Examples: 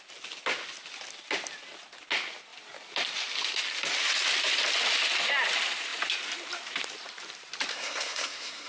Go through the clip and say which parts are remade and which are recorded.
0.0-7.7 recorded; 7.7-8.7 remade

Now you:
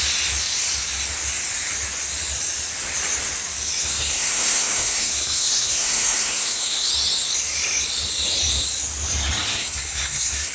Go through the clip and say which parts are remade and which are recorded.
0.0-3.8 recorded; 3.8-6.9 remade; 6.9-9.5 recorded; 9.5-10.5 remade